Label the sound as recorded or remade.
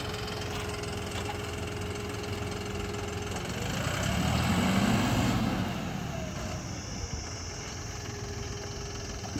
recorded